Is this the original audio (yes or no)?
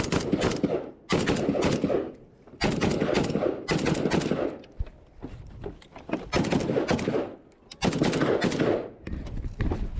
yes